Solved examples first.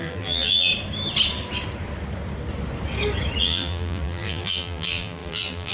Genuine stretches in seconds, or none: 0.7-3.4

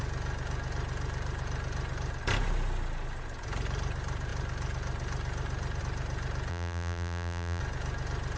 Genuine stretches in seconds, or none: 0.0-6.5; 7.6-8.4